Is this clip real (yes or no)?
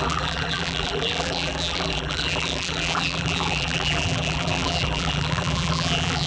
no